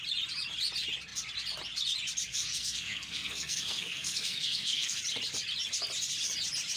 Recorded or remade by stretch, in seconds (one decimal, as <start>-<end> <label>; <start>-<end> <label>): 0.0-2.3 recorded; 2.3-5.0 remade; 5.0-6.8 recorded